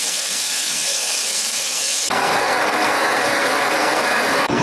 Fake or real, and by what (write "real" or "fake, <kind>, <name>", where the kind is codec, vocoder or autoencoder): fake, codec, SNAC